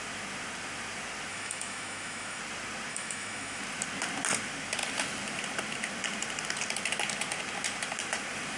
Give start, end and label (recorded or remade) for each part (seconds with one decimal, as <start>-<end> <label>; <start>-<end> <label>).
0.0-1.3 recorded; 1.3-2.4 remade; 2.4-2.9 recorded; 2.9-3.6 remade; 3.6-8.6 recorded